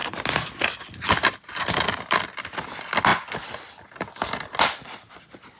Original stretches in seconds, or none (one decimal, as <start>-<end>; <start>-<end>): 0.0-5.6